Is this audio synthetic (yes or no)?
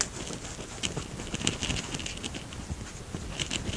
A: no